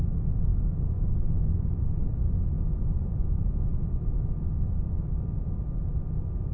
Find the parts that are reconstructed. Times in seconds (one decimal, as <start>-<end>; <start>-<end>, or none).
0.5-2.8; 3.7-5.2